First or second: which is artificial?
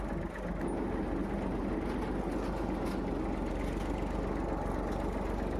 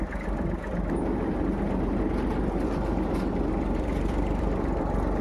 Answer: second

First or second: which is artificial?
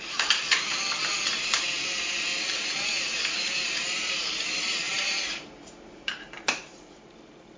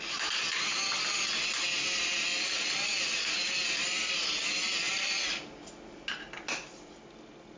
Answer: first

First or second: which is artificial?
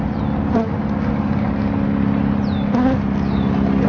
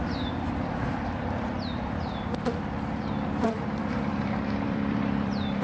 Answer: second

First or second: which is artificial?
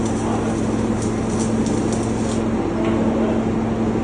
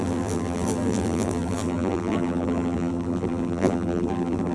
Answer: second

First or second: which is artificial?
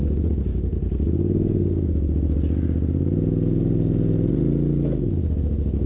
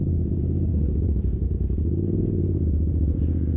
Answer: second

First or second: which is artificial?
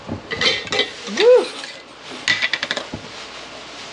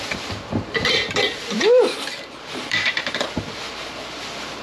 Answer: second